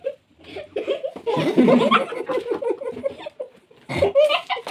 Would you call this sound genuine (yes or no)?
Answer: yes